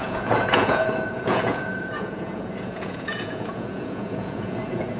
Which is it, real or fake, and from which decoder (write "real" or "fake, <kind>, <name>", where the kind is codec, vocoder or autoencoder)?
fake, vocoder, Vocos